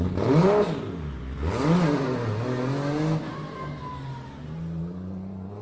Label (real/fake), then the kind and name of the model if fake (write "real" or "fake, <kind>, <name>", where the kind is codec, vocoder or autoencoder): real